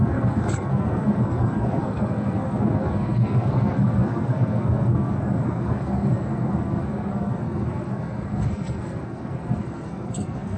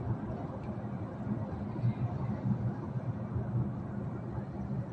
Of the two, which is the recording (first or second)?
second